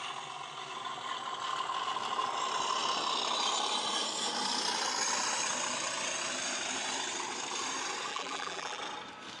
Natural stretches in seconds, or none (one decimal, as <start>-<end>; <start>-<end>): 0.0-8.1; 8.8-9.4